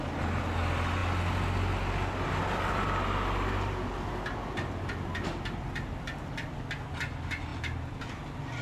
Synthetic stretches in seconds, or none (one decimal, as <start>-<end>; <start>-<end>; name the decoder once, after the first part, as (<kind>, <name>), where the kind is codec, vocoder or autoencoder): none